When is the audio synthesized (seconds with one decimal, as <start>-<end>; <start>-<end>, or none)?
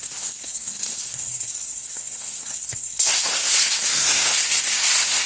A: 0.0-5.3